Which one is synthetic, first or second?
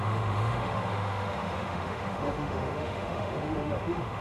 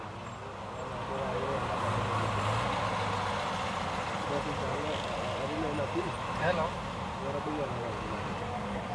first